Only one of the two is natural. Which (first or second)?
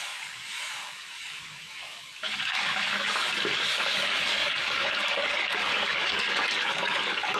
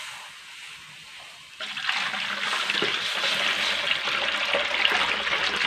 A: second